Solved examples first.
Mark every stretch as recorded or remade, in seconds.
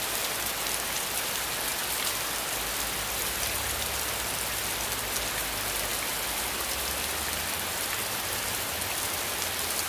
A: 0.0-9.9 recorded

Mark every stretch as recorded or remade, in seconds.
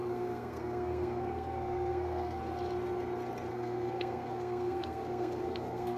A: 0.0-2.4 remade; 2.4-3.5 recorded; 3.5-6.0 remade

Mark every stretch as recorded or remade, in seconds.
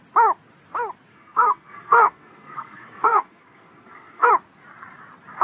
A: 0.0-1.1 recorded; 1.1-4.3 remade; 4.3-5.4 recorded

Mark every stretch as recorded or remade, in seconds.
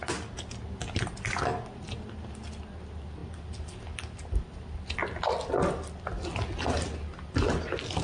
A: 0.0-8.0 recorded